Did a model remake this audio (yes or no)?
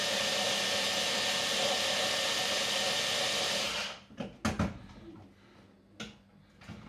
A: no